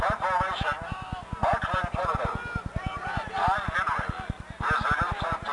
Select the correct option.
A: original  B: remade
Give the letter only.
A